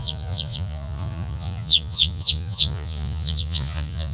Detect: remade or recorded remade